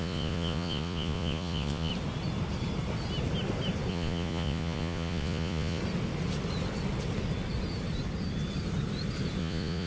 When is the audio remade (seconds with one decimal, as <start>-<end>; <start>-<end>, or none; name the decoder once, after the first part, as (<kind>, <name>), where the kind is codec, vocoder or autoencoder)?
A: 0.0-1.9 (vocoder, Vocos); 3.9-5.8; 9.4-9.9